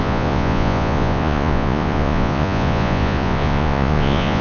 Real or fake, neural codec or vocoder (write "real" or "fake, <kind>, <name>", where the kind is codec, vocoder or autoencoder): fake, vocoder, Vocos